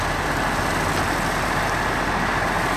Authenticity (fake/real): real